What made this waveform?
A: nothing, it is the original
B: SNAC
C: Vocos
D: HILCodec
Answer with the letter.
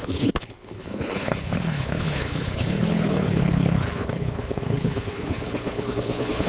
D